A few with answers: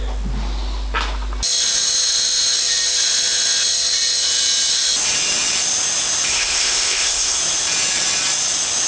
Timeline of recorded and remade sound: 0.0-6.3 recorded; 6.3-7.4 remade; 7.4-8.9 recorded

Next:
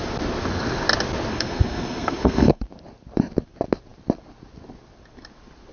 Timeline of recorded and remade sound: 0.0-1.3 recorded; 1.3-2.6 remade; 2.6-5.7 recorded

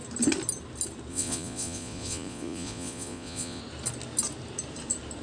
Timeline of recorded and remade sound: 0.0-1.1 recorded; 1.1-3.6 remade; 3.6-5.2 recorded

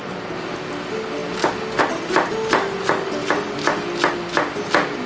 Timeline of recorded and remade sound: 0.0-5.1 recorded

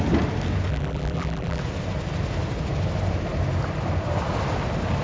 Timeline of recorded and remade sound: 0.0-0.7 recorded; 0.7-1.6 remade; 1.6-5.0 recorded

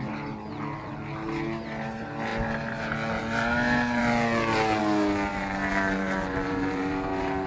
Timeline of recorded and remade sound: 0.0-5.3 recorded; 5.3-7.5 remade